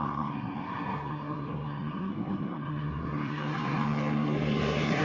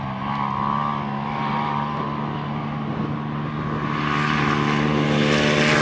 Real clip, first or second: second